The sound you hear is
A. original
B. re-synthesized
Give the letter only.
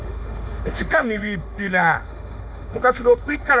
B